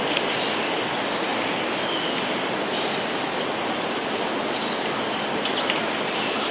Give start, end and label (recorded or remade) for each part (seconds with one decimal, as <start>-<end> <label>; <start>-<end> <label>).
0.0-6.5 recorded